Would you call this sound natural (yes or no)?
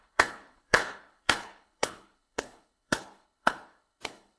no